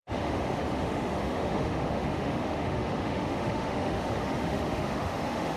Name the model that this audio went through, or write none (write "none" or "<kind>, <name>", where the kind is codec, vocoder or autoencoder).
autoencoder, DAC-VAE